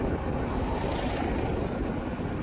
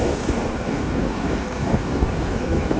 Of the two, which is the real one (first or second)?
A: first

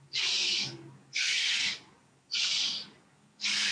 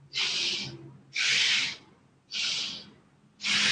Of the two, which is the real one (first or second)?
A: second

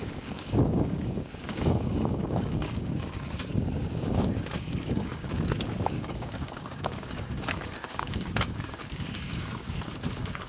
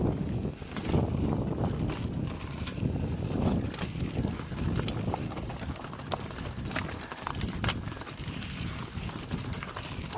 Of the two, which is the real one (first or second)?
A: second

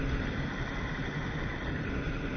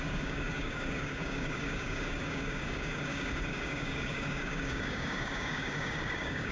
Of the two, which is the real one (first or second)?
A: first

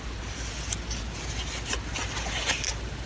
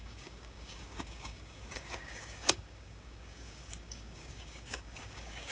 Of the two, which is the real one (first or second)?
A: first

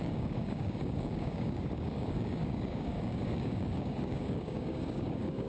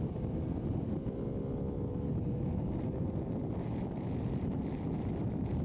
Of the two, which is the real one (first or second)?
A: second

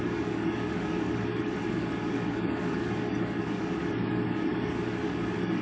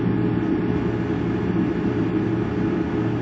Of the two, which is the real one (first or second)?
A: second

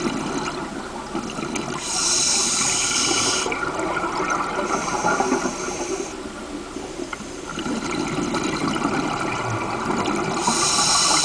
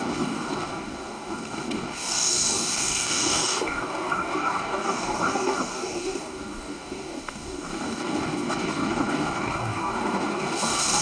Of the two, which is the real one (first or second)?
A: first